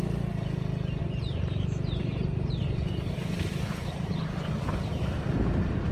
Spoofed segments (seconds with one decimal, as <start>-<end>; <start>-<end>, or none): 1.0-4.5